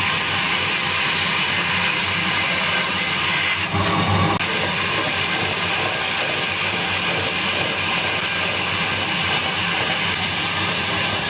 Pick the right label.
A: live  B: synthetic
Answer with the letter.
A